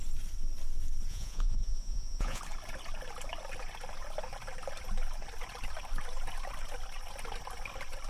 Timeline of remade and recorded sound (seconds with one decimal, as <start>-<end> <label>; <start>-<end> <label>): 0.0-1.1 recorded; 1.1-2.4 remade; 2.4-8.1 recorded